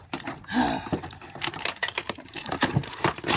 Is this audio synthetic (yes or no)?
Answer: yes